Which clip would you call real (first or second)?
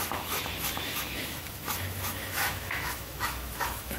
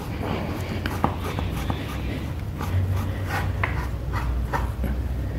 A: second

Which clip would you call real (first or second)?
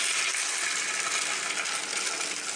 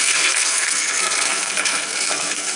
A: first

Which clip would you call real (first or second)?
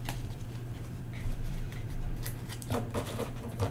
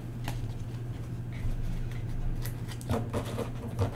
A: second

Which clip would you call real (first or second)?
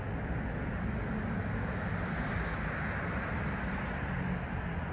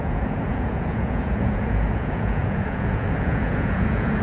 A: first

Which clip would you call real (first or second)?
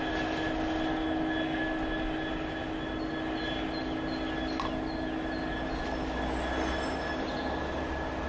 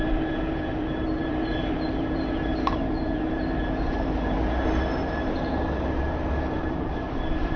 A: first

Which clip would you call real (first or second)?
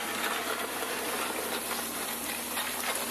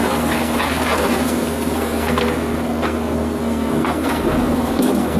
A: first